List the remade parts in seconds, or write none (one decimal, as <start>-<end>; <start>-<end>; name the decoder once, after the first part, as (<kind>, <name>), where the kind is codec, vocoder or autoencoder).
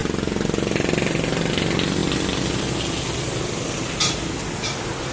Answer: none